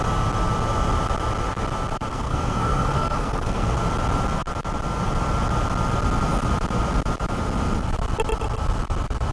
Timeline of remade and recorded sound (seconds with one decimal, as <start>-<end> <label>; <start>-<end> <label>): 0.0-2.1 recorded; 2.1-3.8 remade; 3.8-9.3 recorded